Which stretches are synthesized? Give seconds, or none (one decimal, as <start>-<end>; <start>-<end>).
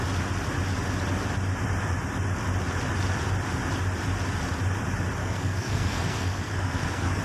5.2-7.2